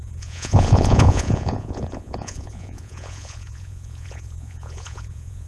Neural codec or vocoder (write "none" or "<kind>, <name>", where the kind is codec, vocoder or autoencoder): vocoder, Vocos